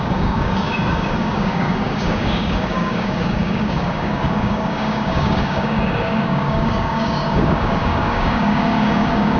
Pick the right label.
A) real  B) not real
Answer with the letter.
B